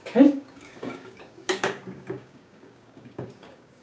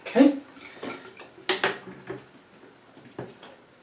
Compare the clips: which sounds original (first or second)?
second